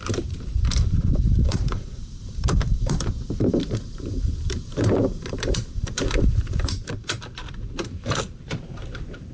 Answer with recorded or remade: remade